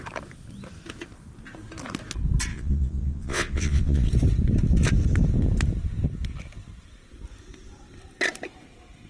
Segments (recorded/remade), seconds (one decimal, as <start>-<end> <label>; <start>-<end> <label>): 0.0-2.5 recorded; 2.5-4.1 remade; 4.1-9.1 recorded